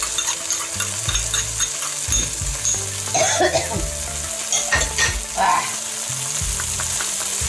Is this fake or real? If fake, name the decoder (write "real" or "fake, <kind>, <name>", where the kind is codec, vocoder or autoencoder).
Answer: real